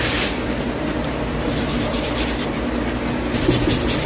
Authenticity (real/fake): real